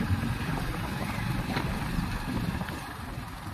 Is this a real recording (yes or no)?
yes